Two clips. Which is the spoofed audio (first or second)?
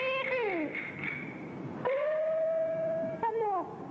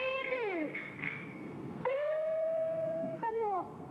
second